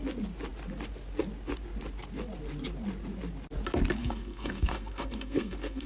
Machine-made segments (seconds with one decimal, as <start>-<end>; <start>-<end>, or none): 4.0-5.9